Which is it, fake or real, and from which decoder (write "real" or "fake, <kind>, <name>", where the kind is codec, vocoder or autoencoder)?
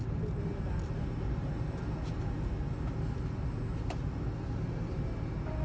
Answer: real